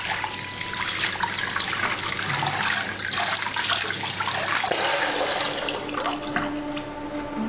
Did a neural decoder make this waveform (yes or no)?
no